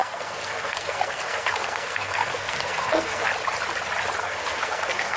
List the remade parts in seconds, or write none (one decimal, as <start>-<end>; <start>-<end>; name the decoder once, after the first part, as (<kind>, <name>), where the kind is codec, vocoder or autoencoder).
0.0-3.3 (codec, SNAC); 4.2-5.2